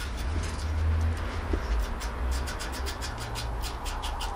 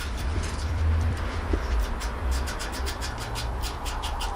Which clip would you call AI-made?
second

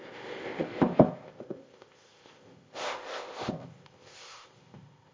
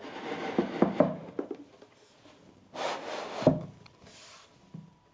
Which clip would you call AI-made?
first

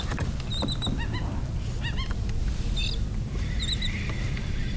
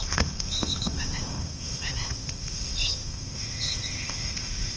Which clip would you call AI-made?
second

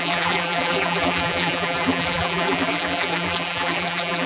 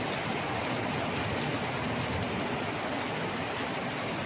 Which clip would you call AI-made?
first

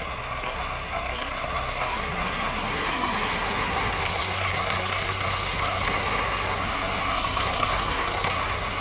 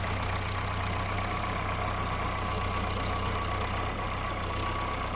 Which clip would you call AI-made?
first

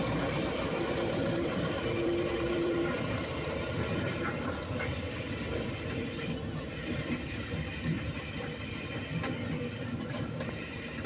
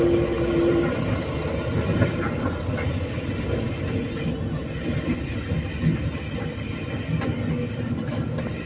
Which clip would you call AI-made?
first